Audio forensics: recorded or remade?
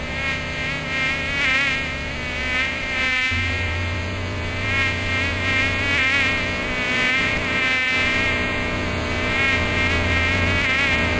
remade